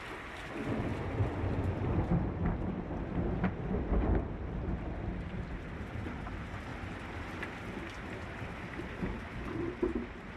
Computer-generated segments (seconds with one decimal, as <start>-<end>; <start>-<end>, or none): none